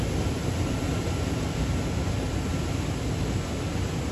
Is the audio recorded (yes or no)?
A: yes